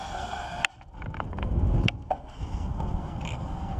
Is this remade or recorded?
remade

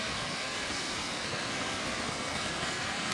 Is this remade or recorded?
remade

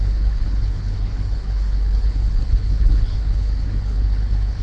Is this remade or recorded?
remade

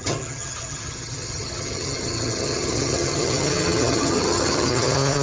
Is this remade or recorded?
remade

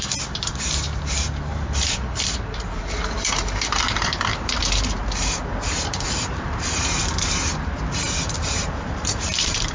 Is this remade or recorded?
remade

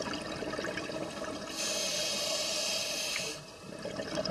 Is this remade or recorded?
recorded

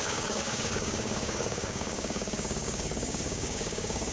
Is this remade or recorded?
remade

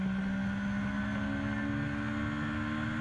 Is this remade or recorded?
recorded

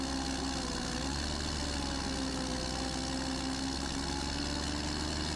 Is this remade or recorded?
recorded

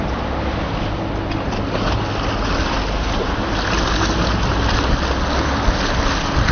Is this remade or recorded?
recorded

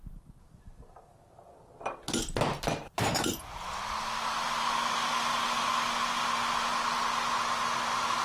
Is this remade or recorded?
recorded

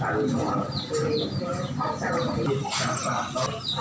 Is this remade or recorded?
recorded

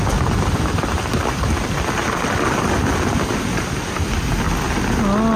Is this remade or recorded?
recorded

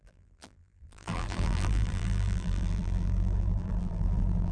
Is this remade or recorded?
remade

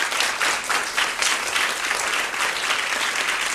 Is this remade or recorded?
recorded